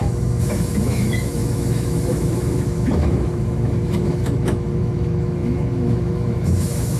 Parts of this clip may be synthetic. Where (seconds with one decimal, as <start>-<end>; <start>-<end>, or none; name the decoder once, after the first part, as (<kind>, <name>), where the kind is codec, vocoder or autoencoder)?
0.0-7.0 (autoencoder, DAC-VAE)

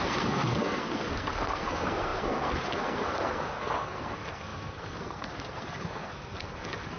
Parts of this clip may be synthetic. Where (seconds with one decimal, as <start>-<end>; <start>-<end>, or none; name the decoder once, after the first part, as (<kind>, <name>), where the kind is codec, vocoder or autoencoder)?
0.0-7.0 (codec, SNAC)

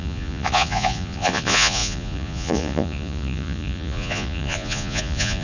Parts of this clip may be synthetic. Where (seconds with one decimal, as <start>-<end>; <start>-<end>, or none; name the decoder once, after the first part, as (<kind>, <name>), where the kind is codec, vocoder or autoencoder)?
0.0-5.4 (vocoder, Vocos)

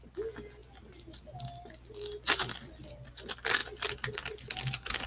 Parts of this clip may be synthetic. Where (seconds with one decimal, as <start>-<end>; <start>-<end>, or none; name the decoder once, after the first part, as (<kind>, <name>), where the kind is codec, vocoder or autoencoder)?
none

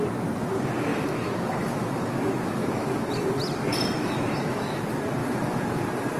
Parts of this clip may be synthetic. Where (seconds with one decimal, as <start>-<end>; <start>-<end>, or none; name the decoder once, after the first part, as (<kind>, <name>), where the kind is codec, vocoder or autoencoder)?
0.9-3.1 (autoencoder, DAC-VAE); 4.0-4.8; 5.2-5.8